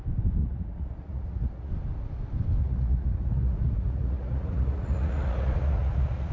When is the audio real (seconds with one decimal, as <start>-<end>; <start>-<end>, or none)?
0.0-0.4; 1.7-2.6